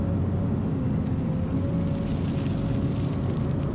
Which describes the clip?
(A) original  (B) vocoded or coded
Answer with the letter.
A